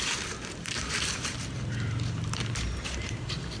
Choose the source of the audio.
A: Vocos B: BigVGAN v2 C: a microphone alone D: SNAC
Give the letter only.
B